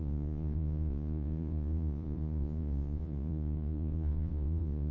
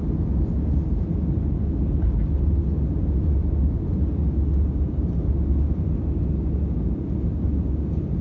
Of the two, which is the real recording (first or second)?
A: second